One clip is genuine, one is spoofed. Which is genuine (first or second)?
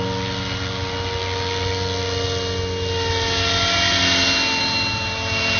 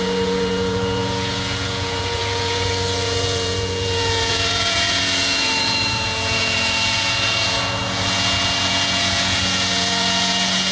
first